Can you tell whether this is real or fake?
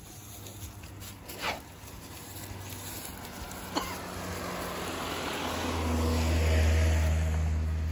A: real